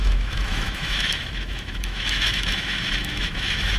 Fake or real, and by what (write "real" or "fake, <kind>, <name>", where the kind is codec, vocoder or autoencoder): fake, autoencoder, DAC-VAE